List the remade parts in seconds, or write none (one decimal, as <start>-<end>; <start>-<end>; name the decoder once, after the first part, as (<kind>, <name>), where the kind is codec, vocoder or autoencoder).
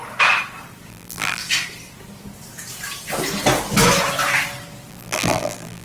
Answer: 0.9-1.4 (vocoder, BigVGAN v2); 4.9-5.8